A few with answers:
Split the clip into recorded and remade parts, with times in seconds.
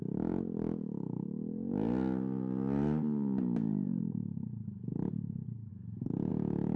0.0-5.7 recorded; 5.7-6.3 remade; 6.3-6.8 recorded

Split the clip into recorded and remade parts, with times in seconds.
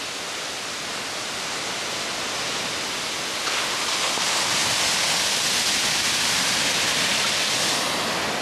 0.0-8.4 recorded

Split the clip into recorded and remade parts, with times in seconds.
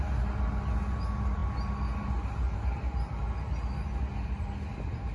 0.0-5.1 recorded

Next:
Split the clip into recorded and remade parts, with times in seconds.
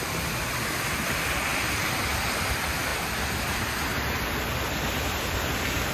0.0-1.5 recorded; 1.5-2.0 remade; 2.0-2.9 recorded; 2.9-4.3 remade; 4.3-5.9 recorded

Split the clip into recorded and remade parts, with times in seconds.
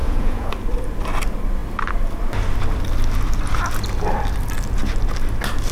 0.0-0.5 remade; 0.5-5.7 recorded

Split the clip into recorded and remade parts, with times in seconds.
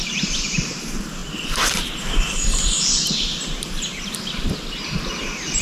0.0-1.2 remade; 1.2-2.0 recorded; 2.0-3.3 remade; 3.3-5.6 recorded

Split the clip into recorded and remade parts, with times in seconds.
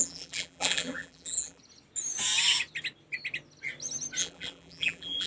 0.0-1.6 remade; 1.6-4.2 recorded; 4.2-5.3 remade